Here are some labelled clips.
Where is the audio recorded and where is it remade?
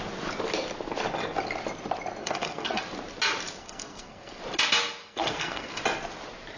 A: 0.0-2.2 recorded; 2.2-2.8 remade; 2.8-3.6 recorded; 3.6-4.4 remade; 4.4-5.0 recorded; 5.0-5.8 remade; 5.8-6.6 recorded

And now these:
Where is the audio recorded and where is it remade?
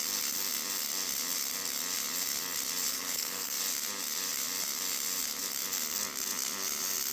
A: 0.0-2.9 recorded; 2.9-3.6 remade; 3.6-7.1 recorded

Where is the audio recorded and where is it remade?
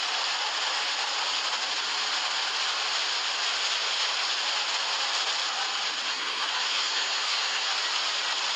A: 0.0-6.1 recorded; 6.1-7.7 remade; 7.7-8.6 recorded